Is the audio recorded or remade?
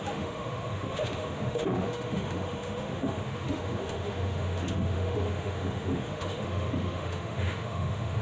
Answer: remade